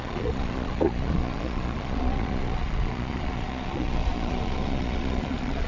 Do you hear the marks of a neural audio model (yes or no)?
yes